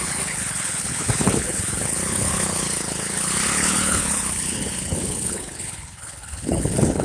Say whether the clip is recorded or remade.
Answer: remade